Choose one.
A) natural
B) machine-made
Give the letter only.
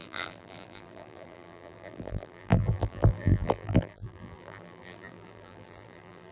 B